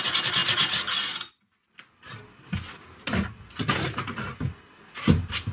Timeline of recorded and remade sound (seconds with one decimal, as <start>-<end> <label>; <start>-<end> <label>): 0.0-5.5 recorded